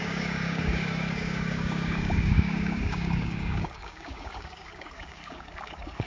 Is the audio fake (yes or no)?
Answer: yes